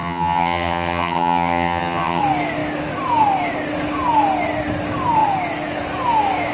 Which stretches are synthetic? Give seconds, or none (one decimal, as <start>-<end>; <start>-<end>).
0.0-2.2